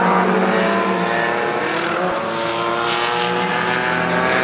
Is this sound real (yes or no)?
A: yes